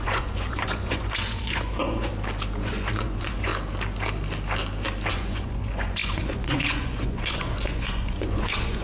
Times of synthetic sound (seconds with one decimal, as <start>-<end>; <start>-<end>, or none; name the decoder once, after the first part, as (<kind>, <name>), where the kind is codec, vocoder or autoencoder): 0.0-2.1 (vocoder, Vocos); 2.6-3.5; 5.1-8.8